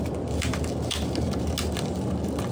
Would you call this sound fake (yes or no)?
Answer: no